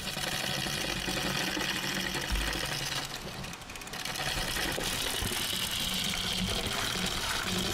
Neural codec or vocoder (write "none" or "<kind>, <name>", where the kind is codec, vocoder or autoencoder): none